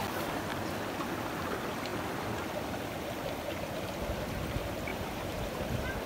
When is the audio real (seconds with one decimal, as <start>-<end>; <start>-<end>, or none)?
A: 0.0-4.9